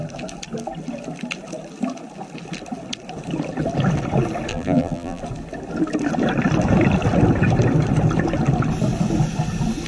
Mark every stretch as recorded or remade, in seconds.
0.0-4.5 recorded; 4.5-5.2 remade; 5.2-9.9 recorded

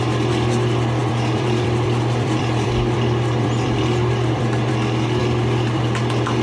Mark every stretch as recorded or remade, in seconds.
0.0-1.0 recorded; 1.0-4.7 remade; 4.7-5.2 recorded; 5.2-5.8 remade; 5.8-6.4 recorded